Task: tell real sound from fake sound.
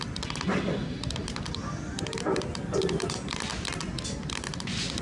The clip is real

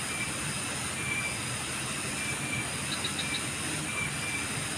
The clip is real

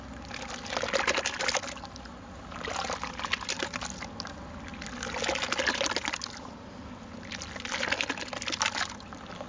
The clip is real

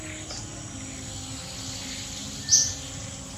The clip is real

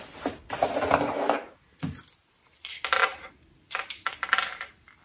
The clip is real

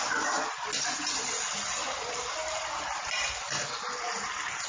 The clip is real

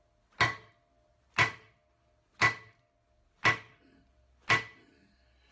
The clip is real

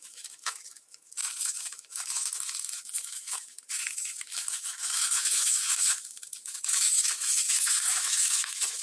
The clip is fake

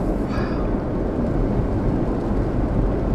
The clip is real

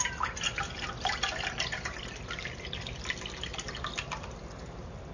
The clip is real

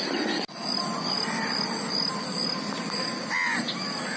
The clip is real